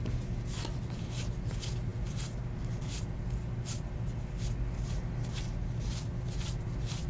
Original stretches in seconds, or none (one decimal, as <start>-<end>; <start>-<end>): 0.0-7.1